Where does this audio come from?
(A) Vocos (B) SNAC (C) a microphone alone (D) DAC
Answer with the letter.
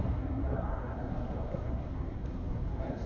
B